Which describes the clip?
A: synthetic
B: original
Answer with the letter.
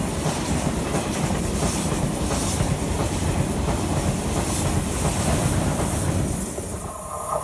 B